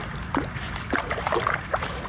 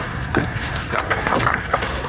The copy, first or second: second